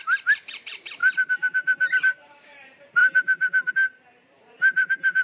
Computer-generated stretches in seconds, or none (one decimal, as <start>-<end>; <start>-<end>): 0.0-1.0; 2.0-5.2